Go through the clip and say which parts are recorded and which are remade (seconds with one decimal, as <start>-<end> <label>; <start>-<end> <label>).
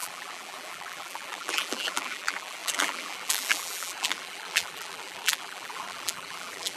0.0-6.8 remade